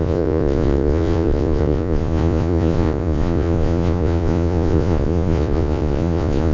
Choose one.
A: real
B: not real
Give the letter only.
B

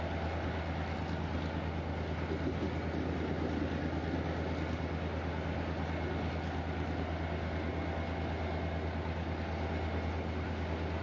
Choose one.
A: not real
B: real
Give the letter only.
B